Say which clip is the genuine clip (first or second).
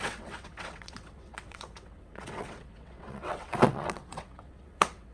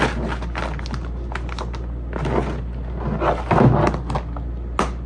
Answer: second